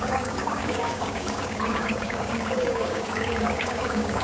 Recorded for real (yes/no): no